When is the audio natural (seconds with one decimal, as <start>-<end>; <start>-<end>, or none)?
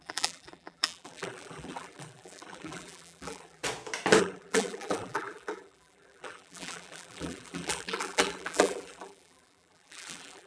3.6-4.2